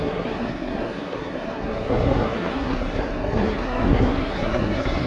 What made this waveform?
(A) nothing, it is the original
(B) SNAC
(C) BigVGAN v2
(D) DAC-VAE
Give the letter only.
B